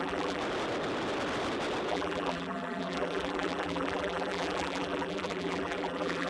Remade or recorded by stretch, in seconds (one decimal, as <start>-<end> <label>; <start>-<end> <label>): 0.0-0.4 remade; 0.4-1.9 recorded; 1.9-6.3 remade